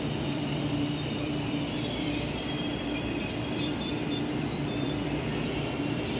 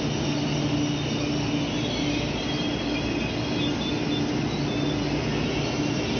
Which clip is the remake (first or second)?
first